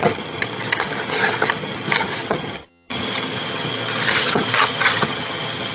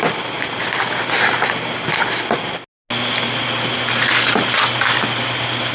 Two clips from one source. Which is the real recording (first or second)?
second